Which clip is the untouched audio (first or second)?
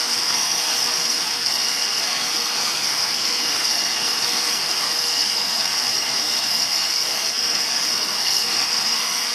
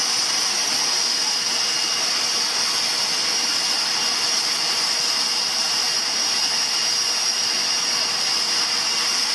second